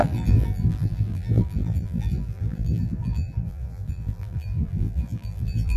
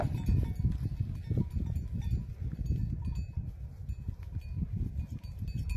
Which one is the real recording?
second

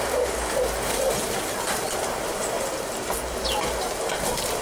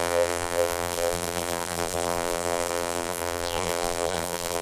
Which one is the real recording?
first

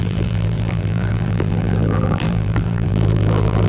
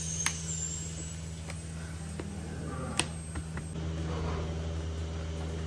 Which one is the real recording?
second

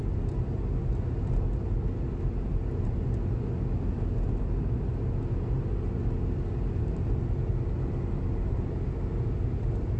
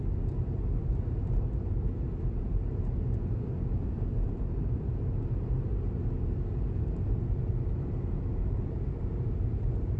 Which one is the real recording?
first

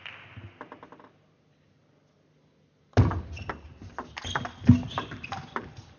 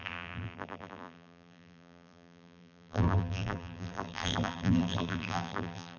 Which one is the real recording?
first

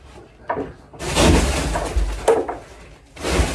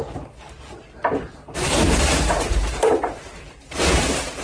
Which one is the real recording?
first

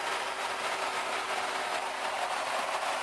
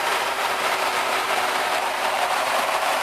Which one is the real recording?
first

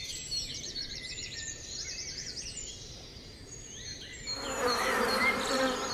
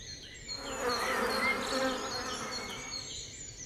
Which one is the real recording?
second